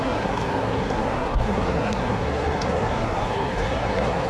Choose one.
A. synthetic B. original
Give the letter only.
A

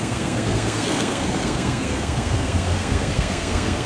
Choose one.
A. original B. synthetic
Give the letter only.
B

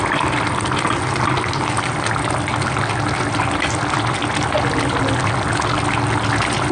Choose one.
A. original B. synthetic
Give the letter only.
A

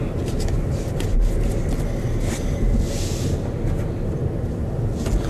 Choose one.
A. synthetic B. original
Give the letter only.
B